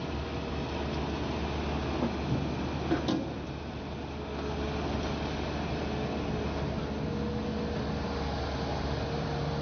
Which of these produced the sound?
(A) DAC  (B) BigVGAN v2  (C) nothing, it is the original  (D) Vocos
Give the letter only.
C